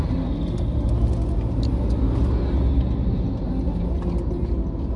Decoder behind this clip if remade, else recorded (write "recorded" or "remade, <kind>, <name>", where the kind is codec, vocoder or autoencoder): recorded